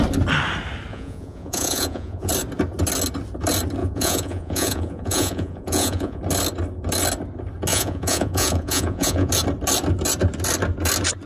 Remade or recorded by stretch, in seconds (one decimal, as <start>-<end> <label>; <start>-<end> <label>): 0.0-0.9 recorded; 0.9-2.3 remade; 2.3-3.8 recorded; 3.8-6.2 remade; 6.2-7.7 recorded; 7.7-9.3 remade; 9.3-11.3 recorded